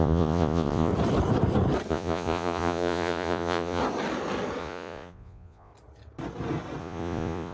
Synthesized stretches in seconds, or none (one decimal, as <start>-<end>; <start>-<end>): 0.0-0.9; 1.9-3.8; 4.6-5.7; 6.8-7.5